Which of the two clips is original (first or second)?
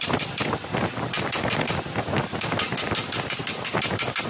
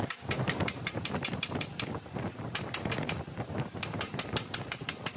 first